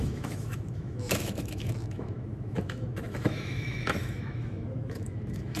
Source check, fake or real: fake